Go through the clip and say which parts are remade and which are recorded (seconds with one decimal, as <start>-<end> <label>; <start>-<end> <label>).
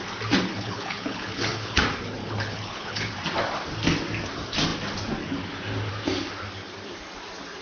0.0-0.5 recorded; 0.5-1.8 remade; 1.8-2.2 recorded; 2.2-3.1 remade; 3.1-7.6 recorded